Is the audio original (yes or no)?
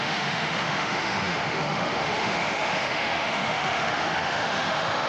no